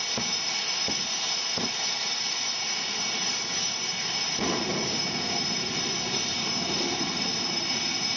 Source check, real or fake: real